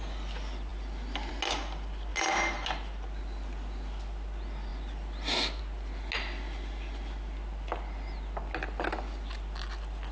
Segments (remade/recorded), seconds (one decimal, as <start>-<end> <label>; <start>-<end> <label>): 0.0-10.1 recorded